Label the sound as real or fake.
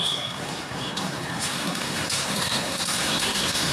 fake